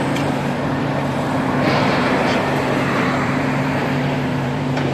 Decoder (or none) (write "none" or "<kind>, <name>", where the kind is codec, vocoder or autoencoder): vocoder, BigVGAN v2